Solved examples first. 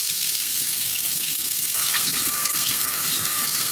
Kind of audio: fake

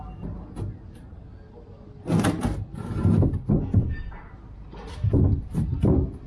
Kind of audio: real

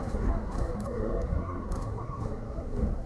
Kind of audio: fake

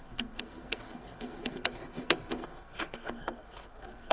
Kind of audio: fake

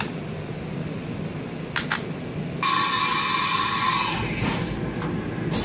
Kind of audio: real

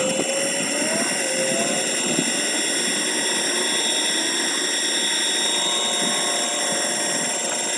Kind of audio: real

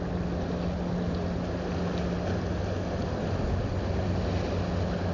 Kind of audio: real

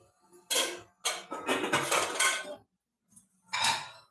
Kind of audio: real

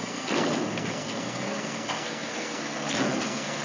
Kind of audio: fake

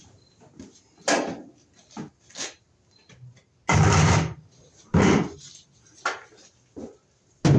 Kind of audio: real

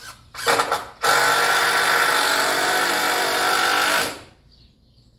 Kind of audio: real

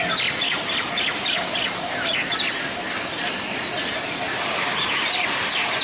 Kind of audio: real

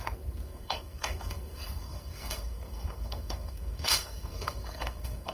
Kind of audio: fake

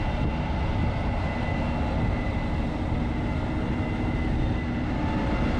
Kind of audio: real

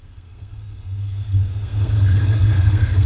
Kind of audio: fake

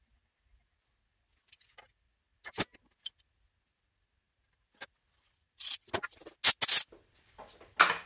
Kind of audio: real